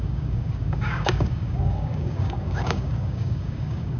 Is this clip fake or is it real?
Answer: fake